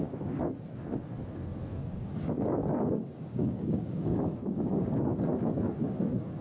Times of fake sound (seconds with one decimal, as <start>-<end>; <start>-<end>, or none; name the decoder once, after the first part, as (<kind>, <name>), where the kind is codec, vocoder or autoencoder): 1.7-5.2 (codec, DAC)